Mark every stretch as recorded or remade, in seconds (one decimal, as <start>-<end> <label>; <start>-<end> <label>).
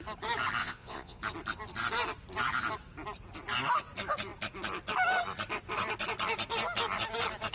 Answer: 0.0-0.6 recorded; 0.6-1.2 remade; 1.2-7.5 recorded